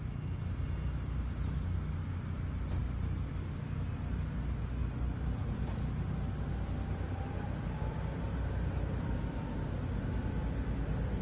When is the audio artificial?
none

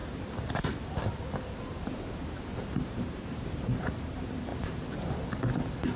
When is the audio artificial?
0.0-6.0 (vocoder, BigVGAN v2)

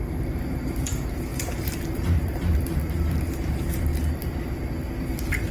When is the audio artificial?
0.0-3.9 (vocoder, BigVGAN v2); 5.1-5.5

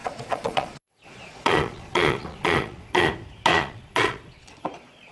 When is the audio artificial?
0.0-3.1 (vocoder, Vocos); 3.5-5.1

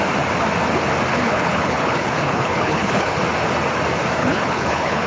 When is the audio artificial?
1.1-3.2 (codec, HILCodec); 4.2-5.1

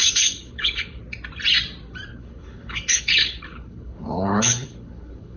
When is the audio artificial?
0.0-1.0 (codec, HILCodec); 2.1-5.4

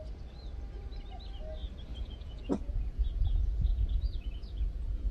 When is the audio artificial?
1.9-5.1 (vocoder, Vocos)